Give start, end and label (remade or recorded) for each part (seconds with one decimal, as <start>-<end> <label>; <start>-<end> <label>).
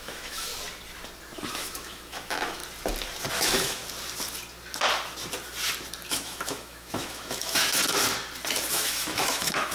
0.0-0.5 remade; 0.5-1.5 recorded; 1.5-2.6 remade; 2.6-3.3 recorded; 3.3-3.8 remade; 3.8-6.1 recorded; 6.1-7.8 remade; 7.8-8.7 recorded; 8.7-9.7 remade